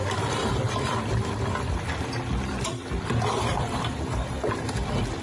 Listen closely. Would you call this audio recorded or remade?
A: remade